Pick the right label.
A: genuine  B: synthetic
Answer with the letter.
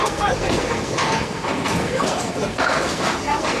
B